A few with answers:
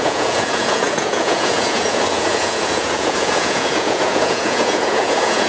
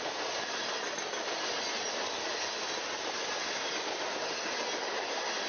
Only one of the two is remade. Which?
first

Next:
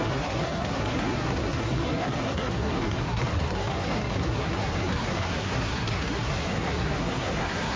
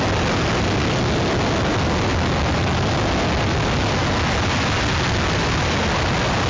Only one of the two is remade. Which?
first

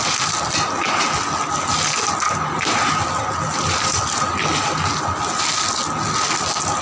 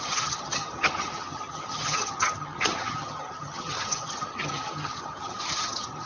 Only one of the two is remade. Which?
second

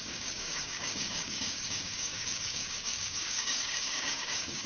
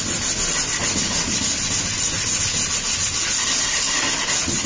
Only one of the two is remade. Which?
first